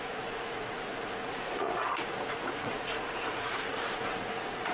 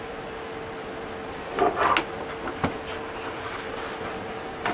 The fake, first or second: first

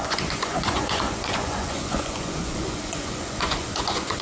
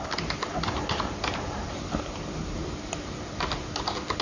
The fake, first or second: first